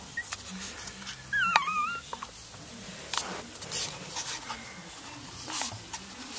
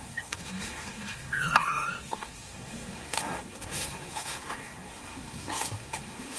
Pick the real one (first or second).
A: first